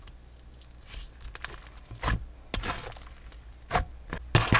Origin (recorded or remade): recorded